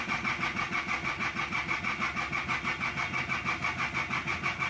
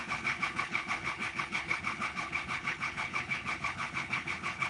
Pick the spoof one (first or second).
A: second